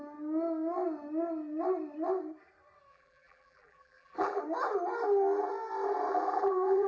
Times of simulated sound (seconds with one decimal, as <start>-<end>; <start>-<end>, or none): 2.9-4.4; 6.1-6.9